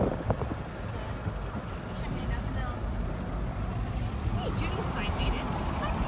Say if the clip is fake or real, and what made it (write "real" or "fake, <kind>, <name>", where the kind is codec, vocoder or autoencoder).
real